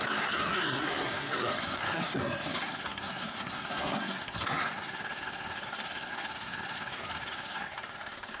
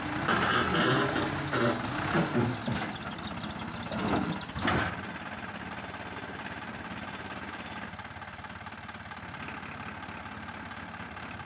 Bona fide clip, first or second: second